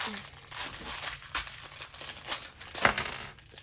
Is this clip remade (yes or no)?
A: no